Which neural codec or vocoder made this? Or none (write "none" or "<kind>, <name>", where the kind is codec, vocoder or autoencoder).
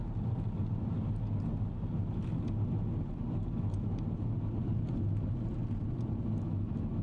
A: none